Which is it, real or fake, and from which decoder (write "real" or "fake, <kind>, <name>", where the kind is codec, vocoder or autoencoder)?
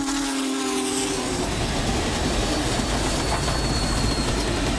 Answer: real